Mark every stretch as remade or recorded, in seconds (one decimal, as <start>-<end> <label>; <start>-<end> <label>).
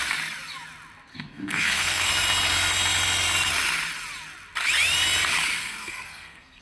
0.0-1.1 recorded; 1.1-2.1 remade; 2.1-5.6 recorded; 5.6-6.6 remade